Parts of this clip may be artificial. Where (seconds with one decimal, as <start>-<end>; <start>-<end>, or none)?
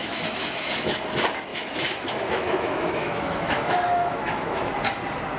0.0-1.0; 1.5-4.7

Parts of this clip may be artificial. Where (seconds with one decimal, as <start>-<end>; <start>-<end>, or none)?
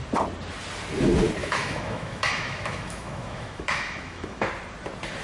1.4-4.5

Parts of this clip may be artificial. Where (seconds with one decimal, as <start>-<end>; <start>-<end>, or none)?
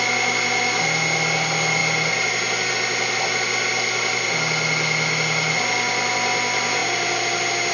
none